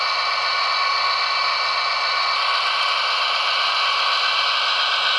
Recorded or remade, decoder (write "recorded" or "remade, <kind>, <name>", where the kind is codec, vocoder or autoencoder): recorded